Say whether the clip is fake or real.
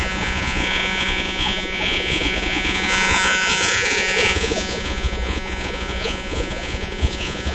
fake